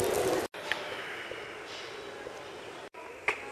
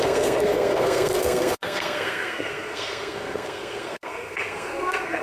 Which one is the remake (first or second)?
second